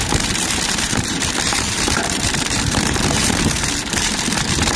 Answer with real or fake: fake